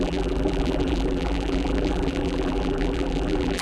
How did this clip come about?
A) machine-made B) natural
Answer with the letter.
A